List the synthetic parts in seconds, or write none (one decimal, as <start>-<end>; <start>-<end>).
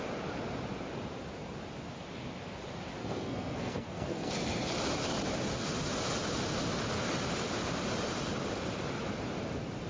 3.0-4.3